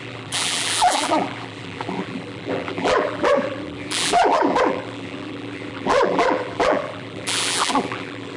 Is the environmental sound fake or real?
fake